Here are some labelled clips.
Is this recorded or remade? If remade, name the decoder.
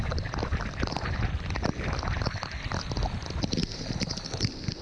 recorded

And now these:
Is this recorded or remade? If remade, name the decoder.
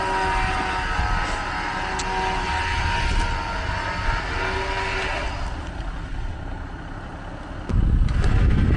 recorded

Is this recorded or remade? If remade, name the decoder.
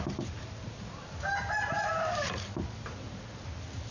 recorded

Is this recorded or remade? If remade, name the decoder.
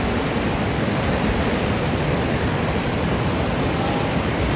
recorded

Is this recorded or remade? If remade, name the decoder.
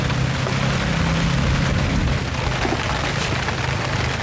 recorded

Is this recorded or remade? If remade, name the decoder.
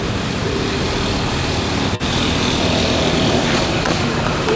remade, vocoder, BigVGAN v2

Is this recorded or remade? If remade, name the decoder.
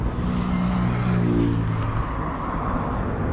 recorded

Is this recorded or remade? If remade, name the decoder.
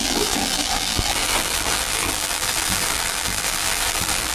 remade, vocoder, BigVGAN v2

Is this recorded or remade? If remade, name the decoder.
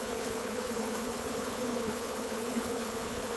remade, codec, HILCodec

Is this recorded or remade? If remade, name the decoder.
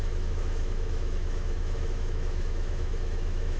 remade, autoencoder, DAC-VAE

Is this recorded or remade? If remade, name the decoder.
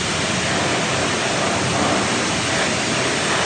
recorded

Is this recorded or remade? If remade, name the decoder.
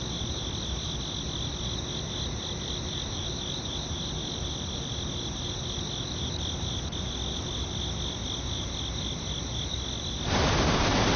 recorded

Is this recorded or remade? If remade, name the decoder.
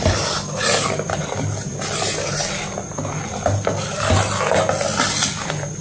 recorded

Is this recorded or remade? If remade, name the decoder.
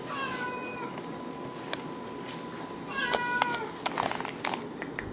recorded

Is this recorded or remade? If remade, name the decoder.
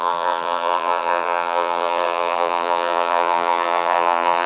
remade, vocoder, BigVGAN v2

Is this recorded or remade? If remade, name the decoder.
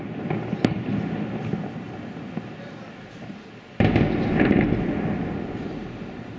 recorded